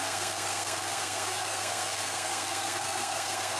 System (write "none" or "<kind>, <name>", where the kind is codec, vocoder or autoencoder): codec, SNAC